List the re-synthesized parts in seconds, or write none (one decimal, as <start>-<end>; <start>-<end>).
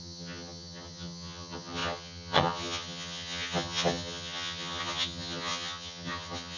0.0-6.6